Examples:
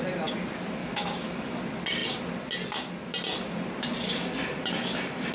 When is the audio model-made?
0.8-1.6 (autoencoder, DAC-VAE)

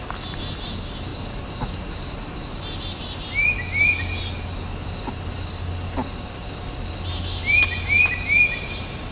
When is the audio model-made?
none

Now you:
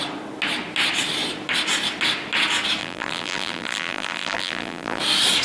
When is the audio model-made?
2.8-5.0 (vocoder, BigVGAN v2)

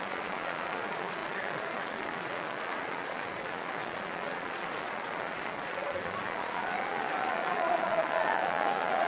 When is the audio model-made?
0.0-9.1 (vocoder, Vocos)

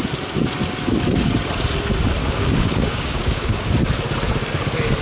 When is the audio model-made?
2.2-3.7 (codec, DAC)

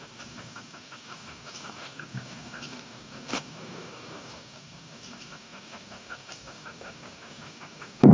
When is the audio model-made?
0.0-8.1 (codec, DAC)

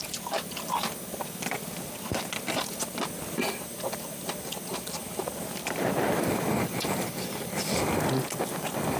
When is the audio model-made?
none

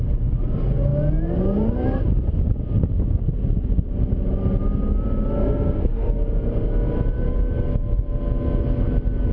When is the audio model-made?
5.4-6.1 (codec, SNAC)